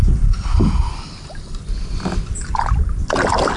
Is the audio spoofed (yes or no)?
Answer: no